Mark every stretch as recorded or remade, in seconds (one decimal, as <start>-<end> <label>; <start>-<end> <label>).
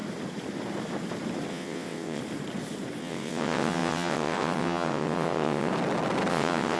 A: 0.0-1.5 recorded; 1.5-2.2 remade; 2.2-3.0 recorded; 3.0-5.7 remade; 5.7-6.3 recorded; 6.3-6.8 remade